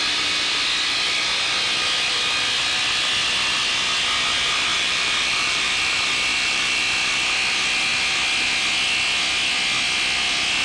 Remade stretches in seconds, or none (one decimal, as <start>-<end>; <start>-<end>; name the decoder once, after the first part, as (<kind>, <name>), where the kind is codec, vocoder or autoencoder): 4.7-5.7 (vocoder, BigVGAN v2); 6.3-6.8